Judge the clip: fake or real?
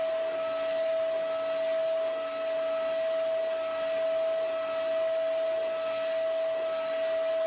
real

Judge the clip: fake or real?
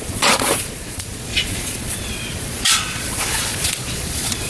fake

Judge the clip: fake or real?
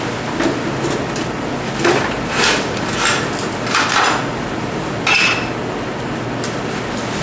real